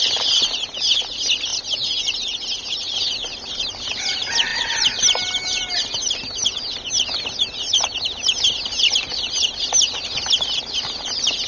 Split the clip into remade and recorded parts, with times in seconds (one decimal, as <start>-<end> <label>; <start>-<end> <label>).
0.0-11.5 recorded

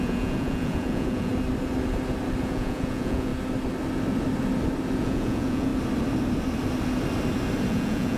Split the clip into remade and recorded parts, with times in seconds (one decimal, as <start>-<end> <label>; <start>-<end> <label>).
0.0-1.3 remade; 1.3-2.4 recorded; 2.4-3.3 remade; 3.3-5.0 recorded; 5.0-5.7 remade; 5.7-7.7 recorded; 7.7-8.2 remade

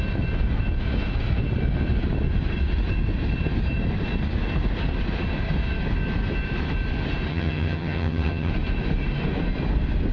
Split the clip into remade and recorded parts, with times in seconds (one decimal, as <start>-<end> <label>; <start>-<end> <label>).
0.0-7.3 recorded; 7.3-8.5 remade; 8.5-10.1 recorded

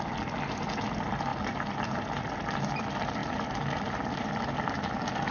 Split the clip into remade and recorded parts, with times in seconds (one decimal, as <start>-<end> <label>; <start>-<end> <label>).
0.0-5.3 recorded

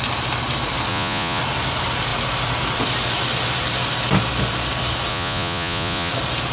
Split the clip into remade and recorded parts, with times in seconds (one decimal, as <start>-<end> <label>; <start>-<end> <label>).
0.0-0.9 recorded; 0.9-1.4 remade; 1.4-5.1 recorded; 5.1-6.1 remade; 6.1-6.5 recorded

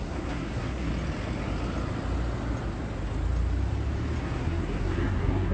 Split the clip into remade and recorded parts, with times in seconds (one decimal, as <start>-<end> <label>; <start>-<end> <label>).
0.0-0.9 remade; 0.9-4.2 recorded; 4.2-5.5 remade

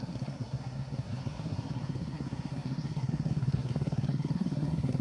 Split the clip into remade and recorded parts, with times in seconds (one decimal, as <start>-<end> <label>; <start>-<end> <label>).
0.0-5.0 remade